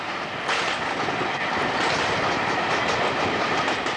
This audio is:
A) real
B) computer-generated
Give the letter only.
A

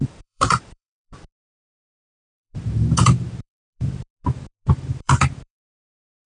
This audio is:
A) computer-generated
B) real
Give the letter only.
A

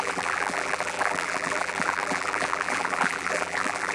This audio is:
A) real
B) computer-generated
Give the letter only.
B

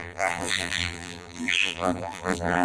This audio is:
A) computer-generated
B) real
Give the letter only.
A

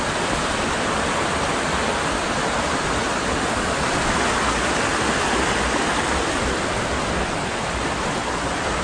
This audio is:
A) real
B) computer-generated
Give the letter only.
A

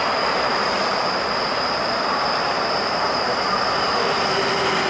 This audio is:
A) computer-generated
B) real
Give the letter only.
A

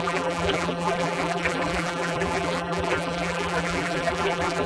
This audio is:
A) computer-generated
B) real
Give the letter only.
A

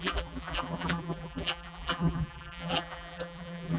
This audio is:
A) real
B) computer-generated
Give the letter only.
B